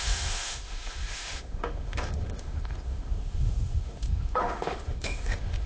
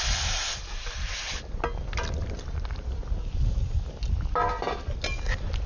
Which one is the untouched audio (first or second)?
second